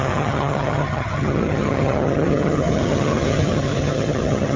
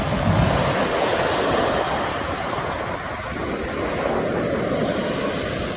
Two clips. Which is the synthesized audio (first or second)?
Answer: first